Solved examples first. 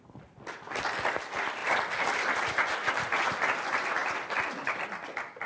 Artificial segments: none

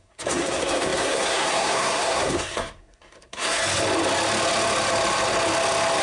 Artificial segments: 0.0-3.6 (codec, SNAC)